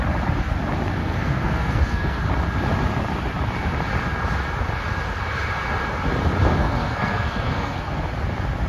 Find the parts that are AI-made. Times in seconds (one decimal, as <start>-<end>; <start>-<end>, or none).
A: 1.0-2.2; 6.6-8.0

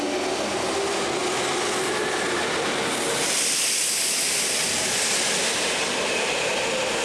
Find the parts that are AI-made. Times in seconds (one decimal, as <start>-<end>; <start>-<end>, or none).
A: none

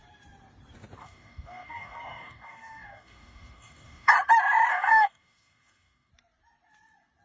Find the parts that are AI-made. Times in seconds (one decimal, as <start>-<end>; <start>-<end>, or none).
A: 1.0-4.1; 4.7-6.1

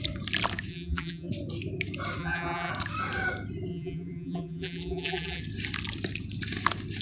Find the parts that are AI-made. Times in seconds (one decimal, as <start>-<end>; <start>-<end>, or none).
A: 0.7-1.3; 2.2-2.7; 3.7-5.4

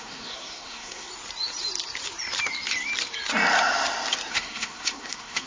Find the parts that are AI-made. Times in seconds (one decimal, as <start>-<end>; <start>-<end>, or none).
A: 0.0-1.1; 4.3-5.5

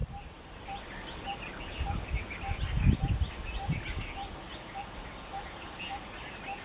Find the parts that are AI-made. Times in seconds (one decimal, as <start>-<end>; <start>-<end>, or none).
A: 0.0-0.6